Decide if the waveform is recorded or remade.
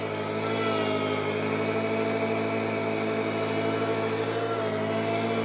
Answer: recorded